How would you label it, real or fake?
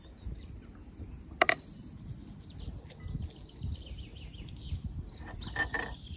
real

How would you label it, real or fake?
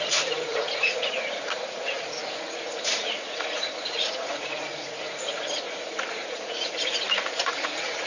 fake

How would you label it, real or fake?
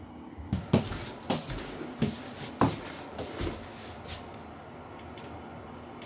real